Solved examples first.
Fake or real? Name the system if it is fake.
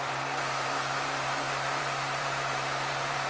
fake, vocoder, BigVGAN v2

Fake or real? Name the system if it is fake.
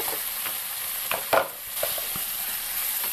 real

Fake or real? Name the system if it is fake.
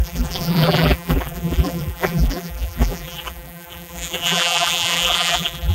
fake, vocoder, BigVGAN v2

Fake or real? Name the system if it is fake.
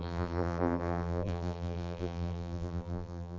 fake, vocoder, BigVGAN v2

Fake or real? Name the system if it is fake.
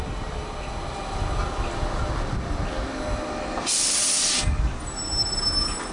real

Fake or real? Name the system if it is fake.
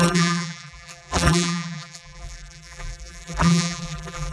fake, vocoder, BigVGAN v2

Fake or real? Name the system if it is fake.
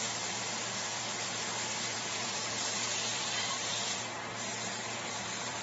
fake, vocoder, BigVGAN v2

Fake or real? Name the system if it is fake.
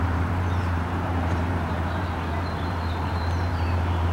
fake, vocoder, BigVGAN v2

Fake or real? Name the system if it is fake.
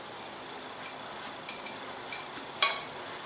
real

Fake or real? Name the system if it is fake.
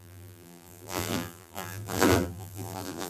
fake, vocoder, BigVGAN v2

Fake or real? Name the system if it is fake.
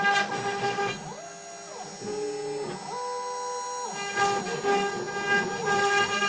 real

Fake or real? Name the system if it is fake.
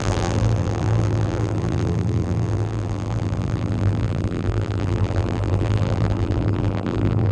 fake, vocoder, BigVGAN v2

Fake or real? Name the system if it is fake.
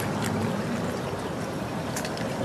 real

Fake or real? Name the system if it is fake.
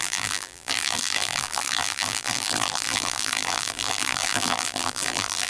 fake, vocoder, BigVGAN v2